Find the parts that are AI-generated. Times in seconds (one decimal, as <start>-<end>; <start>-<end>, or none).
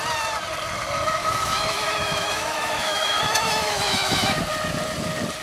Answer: 1.2-4.4